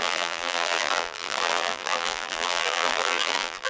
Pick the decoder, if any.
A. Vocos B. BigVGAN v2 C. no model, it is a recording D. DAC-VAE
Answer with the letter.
B